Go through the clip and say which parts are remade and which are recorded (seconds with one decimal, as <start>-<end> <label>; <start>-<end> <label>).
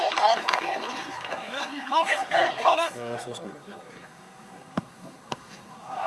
0.0-6.1 remade